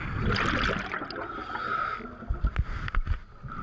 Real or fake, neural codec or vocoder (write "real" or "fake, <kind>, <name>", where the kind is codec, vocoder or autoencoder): real